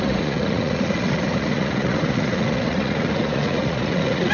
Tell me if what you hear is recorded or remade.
remade